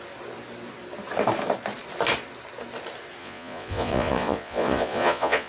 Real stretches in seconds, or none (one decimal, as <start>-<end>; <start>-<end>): 0.0-3.2